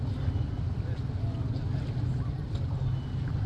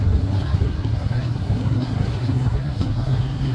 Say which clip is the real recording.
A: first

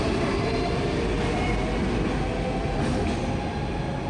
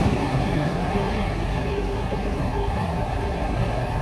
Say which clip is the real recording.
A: first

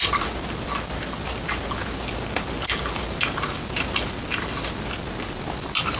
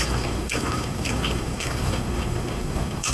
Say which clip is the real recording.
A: first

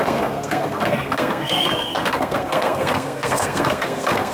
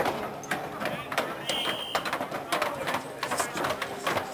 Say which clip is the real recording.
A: second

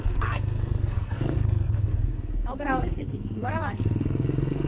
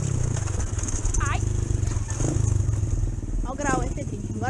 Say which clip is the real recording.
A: second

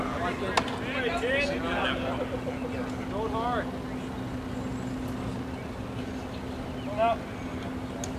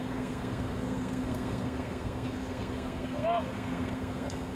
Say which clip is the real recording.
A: first